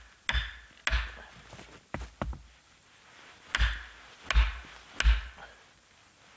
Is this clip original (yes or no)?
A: yes